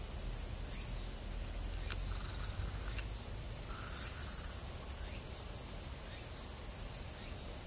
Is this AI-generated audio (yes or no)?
no